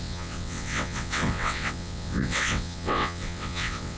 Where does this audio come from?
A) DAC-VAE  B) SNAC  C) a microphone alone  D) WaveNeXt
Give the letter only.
D